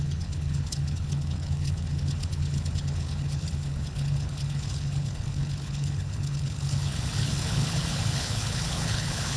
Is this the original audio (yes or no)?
no